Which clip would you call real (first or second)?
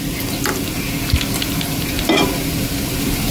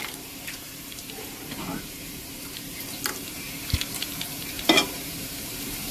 first